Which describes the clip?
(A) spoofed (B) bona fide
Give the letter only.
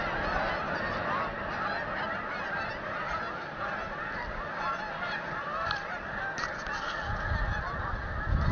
B